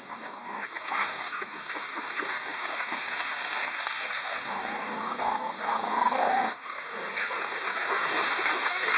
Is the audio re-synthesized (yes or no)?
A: yes